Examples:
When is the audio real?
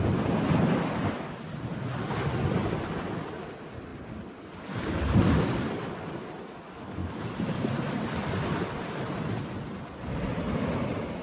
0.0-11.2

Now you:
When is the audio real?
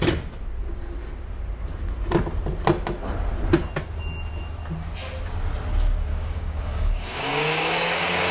0.0-6.1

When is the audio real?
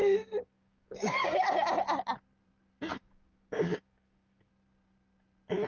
1.5-3.0; 4.5-5.7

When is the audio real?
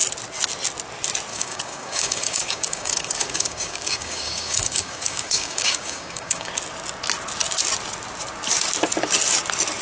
0.0-1.3; 6.5-9.8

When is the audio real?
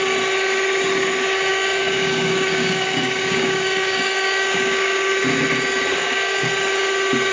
0.0-1.5; 5.1-5.9; 6.5-7.3